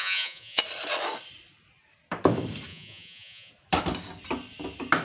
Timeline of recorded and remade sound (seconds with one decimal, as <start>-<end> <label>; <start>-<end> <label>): 0.0-0.6 remade; 0.6-2.7 recorded; 2.7-3.5 remade; 3.5-5.0 recorded